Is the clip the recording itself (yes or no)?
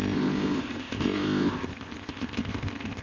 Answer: no